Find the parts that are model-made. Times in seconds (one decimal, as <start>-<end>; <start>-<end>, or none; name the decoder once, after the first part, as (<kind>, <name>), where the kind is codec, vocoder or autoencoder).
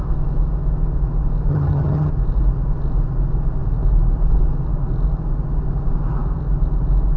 1.5-2.1 (vocoder, HiFi-GAN)